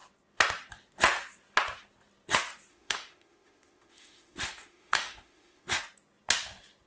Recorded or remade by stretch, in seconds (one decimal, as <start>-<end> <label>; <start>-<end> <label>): 0.0-2.7 recorded; 2.7-5.8 remade; 5.8-6.9 recorded